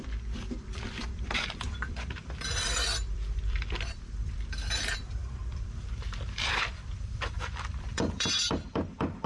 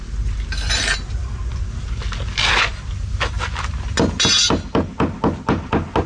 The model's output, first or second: first